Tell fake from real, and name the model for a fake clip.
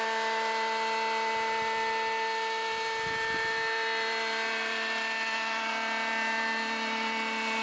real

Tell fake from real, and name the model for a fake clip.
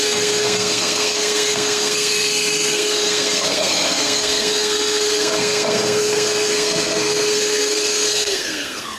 fake, codec, SNAC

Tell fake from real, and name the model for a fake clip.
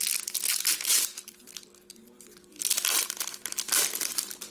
fake, vocoder, BigVGAN v2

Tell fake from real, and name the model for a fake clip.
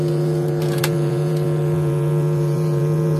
fake, vocoder, Vocos